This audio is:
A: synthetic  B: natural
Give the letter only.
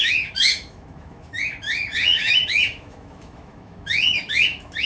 A